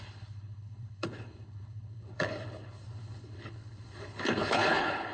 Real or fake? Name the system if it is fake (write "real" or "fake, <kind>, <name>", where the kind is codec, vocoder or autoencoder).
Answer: fake, codec, HILCodec